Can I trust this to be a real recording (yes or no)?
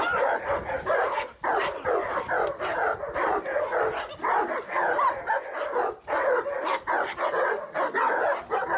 yes